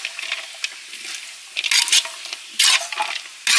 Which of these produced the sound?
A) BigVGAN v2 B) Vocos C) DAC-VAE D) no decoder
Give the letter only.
D